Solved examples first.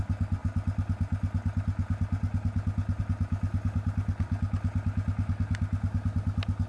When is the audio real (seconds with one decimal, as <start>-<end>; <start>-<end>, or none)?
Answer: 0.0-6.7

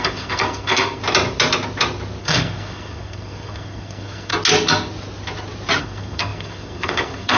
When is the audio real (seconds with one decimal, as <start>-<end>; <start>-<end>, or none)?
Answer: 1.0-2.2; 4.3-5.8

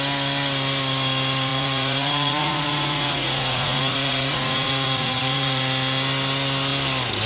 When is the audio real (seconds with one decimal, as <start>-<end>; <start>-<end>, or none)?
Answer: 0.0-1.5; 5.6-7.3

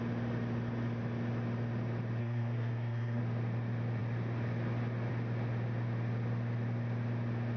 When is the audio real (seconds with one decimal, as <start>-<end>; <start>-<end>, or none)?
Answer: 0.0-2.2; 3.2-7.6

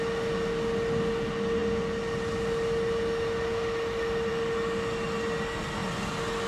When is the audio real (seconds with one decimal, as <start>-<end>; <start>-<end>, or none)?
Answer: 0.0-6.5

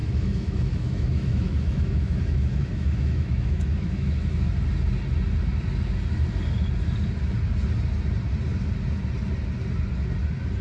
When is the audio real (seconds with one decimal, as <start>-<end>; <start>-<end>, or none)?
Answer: 4.3-10.6